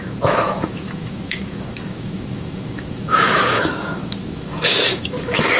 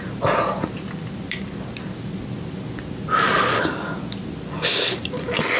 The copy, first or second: first